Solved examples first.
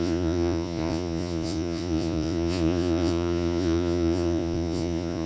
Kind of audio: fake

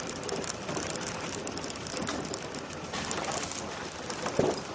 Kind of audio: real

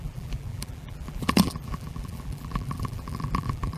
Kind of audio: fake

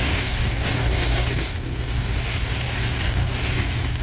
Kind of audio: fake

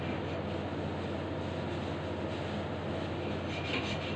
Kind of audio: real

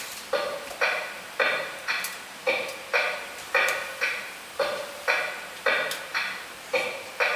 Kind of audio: fake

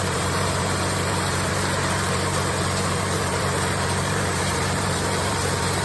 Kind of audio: fake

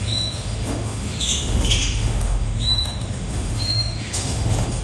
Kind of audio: fake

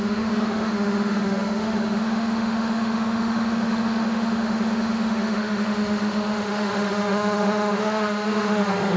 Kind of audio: fake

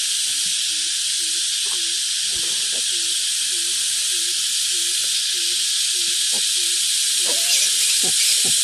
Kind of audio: real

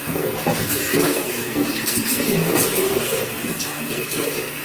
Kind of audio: fake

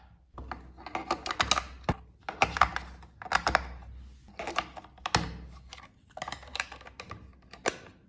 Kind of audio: real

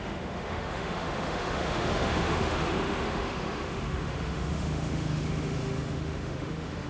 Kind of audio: fake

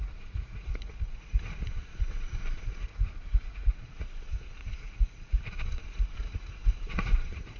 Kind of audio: fake